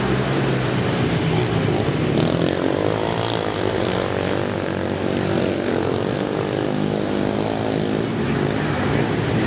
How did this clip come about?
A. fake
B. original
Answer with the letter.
B